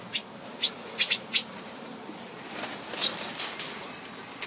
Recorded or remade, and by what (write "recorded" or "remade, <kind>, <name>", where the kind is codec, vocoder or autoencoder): recorded